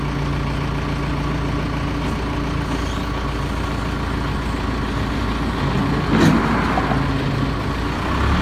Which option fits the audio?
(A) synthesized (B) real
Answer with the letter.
B